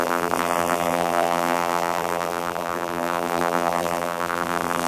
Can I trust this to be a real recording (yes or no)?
no